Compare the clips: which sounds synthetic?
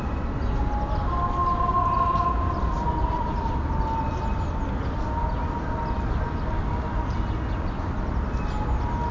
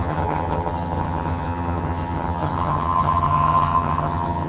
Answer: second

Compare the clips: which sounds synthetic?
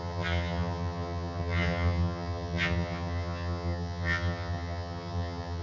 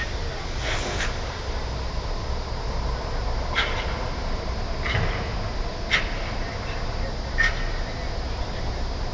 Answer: first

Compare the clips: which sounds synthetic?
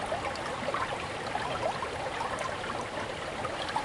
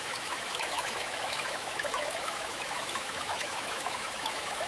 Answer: second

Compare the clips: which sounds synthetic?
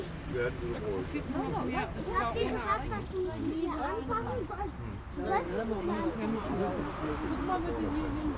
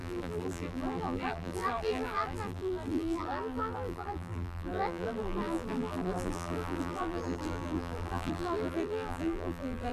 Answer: second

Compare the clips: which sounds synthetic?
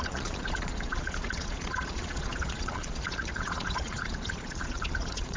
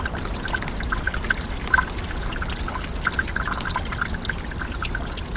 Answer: first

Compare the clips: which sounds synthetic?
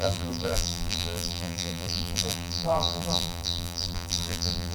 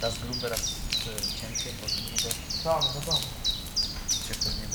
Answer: first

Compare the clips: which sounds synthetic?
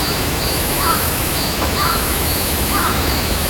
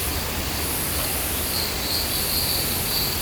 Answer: first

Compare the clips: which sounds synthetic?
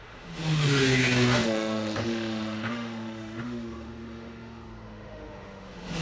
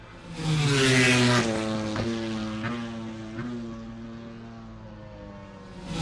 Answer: first